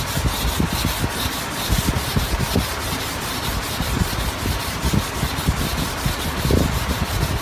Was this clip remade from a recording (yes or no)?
no